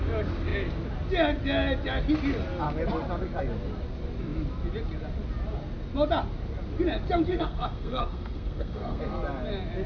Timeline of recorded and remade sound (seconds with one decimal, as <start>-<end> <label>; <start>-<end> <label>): 0.0-7.3 recorded; 7.3-9.0 remade; 9.0-9.9 recorded